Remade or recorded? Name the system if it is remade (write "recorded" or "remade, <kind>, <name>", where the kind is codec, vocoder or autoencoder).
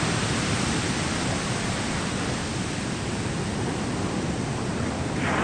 recorded